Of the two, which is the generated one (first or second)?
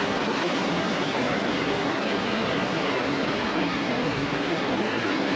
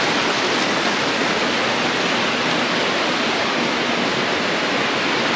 first